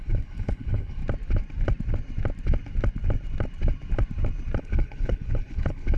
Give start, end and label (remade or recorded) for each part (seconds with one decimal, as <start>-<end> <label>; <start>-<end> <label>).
0.0-1.0 remade; 1.0-4.6 recorded; 4.6-6.0 remade